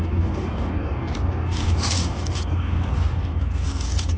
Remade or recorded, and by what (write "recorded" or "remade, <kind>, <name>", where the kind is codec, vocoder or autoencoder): remade, codec, DAC